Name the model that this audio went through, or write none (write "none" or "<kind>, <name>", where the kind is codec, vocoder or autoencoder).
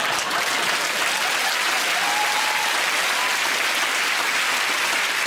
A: none